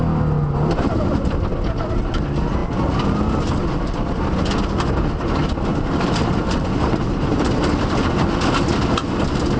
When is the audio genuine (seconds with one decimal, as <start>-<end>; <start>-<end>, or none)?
0.0-5.7; 7.6-9.6